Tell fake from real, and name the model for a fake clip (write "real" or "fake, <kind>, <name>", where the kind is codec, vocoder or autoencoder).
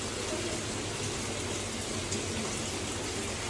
real